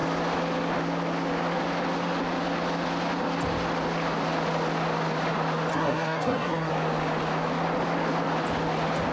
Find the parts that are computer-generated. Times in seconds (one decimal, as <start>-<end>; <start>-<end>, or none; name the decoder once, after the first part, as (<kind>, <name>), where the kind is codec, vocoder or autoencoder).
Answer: 5.7-6.7 (codec, SNAC)